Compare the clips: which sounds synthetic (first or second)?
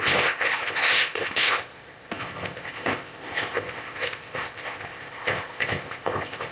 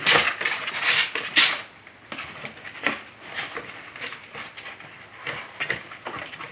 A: first